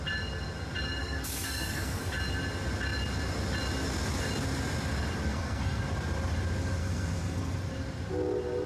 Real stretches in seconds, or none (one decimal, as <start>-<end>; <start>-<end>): 0.0-1.0; 2.0-5.2; 5.8-6.8; 7.6-8.7